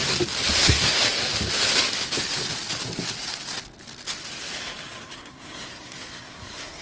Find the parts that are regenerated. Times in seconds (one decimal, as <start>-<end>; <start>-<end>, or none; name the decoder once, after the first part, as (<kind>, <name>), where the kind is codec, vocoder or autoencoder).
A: 0.6-1.0 (codec, SNAC); 5.1-6.8